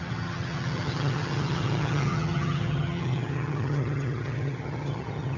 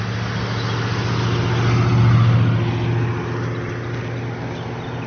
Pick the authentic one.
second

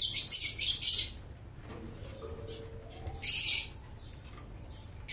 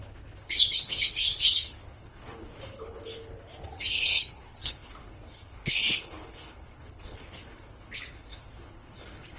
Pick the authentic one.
first